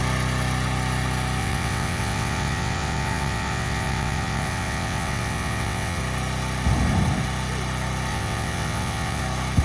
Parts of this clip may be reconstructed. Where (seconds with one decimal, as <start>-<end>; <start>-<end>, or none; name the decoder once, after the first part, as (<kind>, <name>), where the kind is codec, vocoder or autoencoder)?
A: 1.4-6.0 (vocoder, WaveNeXt); 8.1-9.2